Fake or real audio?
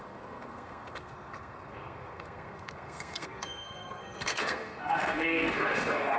fake